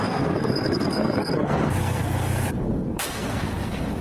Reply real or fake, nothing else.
fake